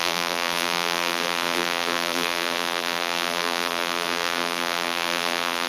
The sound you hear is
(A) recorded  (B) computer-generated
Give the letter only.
B